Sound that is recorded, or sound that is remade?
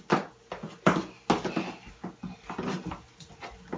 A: recorded